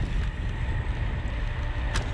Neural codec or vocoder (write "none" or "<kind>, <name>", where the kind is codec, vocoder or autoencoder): none